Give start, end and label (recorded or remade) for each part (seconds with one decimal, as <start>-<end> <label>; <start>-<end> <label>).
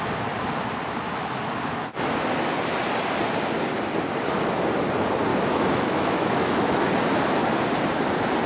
0.0-5.3 recorded; 5.3-6.8 remade; 6.8-8.5 recorded